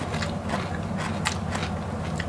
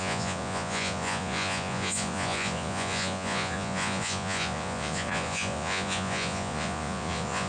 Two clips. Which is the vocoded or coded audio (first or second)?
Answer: second